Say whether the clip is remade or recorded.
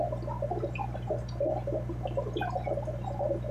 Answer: recorded